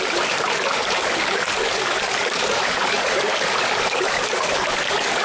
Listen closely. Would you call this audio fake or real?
fake